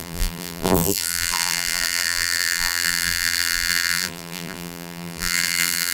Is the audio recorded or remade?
remade